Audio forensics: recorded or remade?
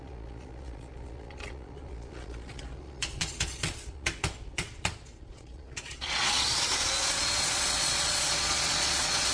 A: remade